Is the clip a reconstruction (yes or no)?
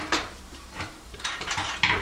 yes